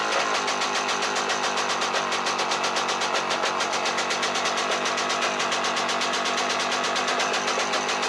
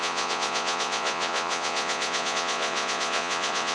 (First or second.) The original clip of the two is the first